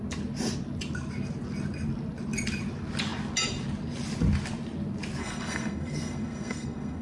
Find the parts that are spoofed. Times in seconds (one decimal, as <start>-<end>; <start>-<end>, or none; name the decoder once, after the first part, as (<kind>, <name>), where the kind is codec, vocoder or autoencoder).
5.2-7.0 (codec, SNAC)